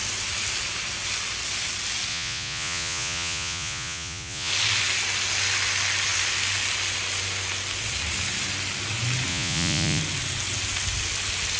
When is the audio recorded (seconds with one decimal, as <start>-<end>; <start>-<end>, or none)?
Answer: 0.0-2.1; 4.5-9.3; 10.0-11.6